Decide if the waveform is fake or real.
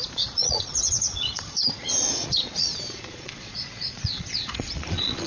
fake